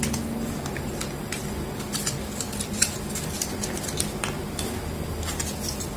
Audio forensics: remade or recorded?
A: recorded